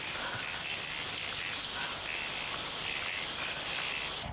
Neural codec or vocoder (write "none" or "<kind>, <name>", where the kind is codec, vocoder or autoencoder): none